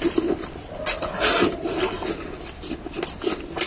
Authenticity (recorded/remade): recorded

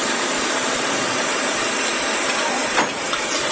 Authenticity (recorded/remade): recorded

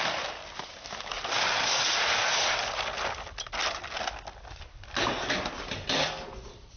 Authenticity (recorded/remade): recorded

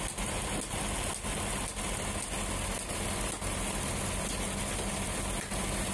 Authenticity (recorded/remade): recorded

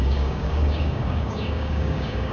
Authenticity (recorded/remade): remade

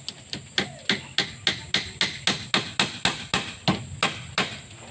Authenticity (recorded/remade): recorded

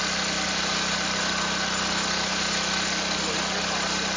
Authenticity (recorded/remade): recorded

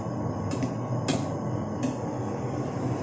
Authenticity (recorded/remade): recorded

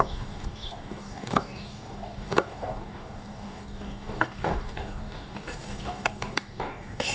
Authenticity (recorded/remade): remade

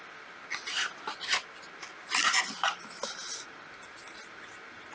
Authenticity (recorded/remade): recorded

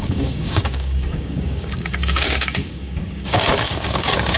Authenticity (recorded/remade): remade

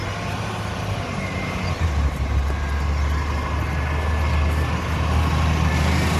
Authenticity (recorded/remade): recorded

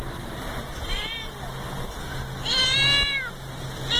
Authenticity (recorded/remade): recorded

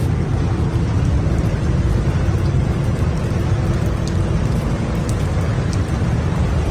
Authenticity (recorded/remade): recorded